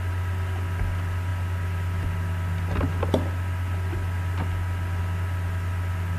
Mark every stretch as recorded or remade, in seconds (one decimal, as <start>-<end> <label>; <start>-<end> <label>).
0.0-6.2 recorded